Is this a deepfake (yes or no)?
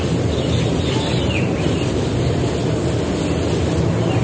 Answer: no